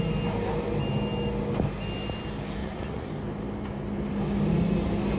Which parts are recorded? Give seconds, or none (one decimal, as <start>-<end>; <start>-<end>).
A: 0.0-2.6; 3.1-5.2